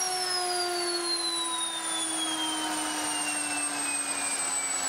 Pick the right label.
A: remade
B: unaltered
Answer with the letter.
B